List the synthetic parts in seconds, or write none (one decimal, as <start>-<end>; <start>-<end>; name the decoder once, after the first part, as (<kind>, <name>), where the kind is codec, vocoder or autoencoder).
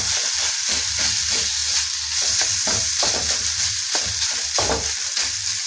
0.0-1.6 (vocoder, BigVGAN v2); 2.4-5.7